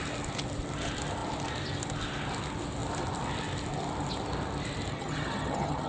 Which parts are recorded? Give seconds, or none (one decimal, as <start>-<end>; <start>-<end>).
0.0-4.9